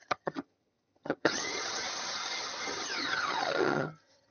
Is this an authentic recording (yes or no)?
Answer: no